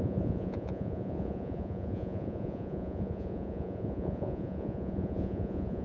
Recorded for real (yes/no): no